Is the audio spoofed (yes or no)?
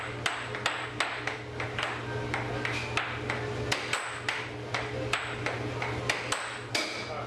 no